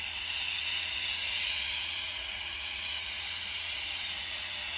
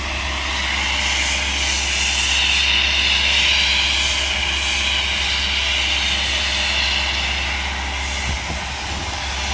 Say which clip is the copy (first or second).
first